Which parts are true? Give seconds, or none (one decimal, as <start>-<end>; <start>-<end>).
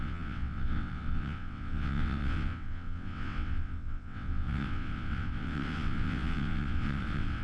none